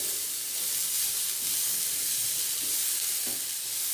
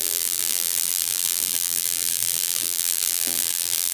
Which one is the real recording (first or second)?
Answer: first